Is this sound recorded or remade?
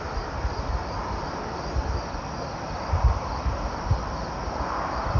recorded